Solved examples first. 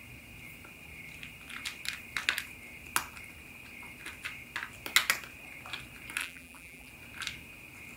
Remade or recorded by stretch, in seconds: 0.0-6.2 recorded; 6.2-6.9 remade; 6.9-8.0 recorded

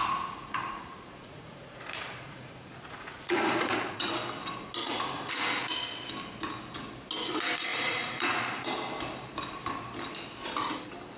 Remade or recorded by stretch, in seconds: 0.0-4.1 remade; 4.1-4.8 recorded; 4.8-5.3 remade; 5.3-7.7 recorded; 7.7-8.6 remade; 8.6-11.2 recorded

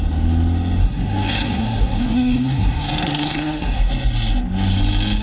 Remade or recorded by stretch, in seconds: 0.0-0.8 recorded; 0.8-3.9 remade; 3.9-5.2 recorded

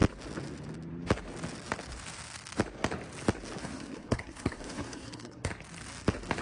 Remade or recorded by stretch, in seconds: 0.0-3.6 recorded; 3.6-5.5 remade; 5.5-6.4 recorded

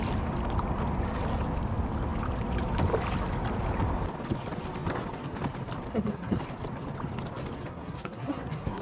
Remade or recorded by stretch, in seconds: 0.0-5.9 recorded; 5.9-6.4 remade; 6.4-7.7 recorded; 7.7-8.8 remade

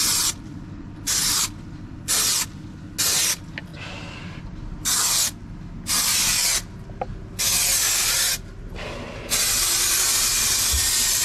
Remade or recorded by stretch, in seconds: 0.0-11.2 recorded